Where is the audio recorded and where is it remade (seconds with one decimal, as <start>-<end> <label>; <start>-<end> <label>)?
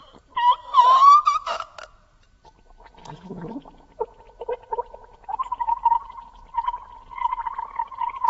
0.0-3.0 recorded; 3.0-3.5 remade; 3.5-8.3 recorded